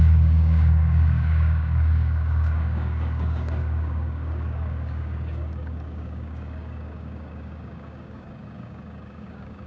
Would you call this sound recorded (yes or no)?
no